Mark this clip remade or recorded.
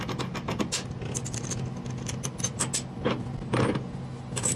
recorded